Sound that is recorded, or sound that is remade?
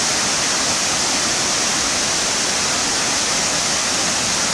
recorded